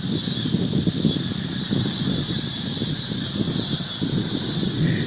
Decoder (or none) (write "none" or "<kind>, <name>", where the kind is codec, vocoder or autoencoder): none